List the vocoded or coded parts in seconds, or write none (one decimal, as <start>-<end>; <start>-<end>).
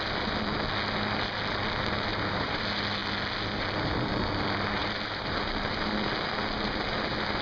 2.1-2.6; 4.8-5.4